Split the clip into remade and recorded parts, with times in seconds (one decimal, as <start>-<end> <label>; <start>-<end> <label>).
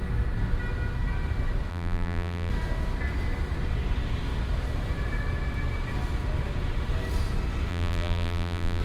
0.0-1.7 recorded; 1.7-2.5 remade; 2.5-7.7 recorded; 7.7-8.8 remade